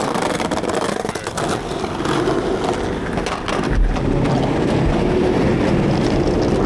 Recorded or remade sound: recorded